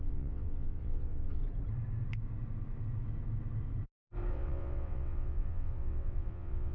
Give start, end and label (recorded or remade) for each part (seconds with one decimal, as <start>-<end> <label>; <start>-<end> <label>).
0.0-1.4 remade; 1.4-4.3 recorded; 4.3-6.7 remade